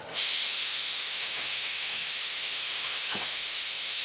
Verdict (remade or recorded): remade